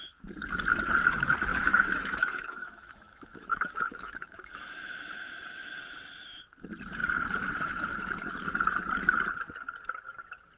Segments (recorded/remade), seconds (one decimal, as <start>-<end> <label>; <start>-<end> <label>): 0.0-1.5 recorded; 1.5-5.8 remade; 5.8-10.6 recorded